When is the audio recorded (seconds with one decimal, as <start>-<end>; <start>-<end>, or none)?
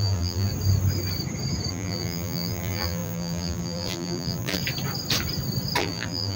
0.5-1.7; 4.6-5.8